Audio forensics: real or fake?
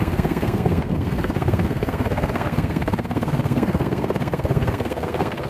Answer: fake